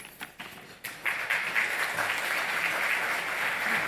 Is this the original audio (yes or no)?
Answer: yes